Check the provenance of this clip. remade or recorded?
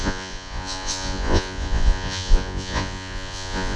remade